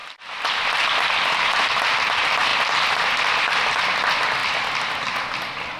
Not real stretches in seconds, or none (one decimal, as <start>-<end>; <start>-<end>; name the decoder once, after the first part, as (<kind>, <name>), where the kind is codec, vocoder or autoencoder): none